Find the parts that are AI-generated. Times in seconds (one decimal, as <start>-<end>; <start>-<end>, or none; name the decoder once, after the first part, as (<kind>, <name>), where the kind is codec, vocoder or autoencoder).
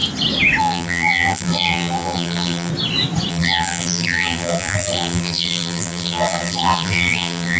0.6-2.7 (vocoder, BigVGAN v2); 3.3-7.6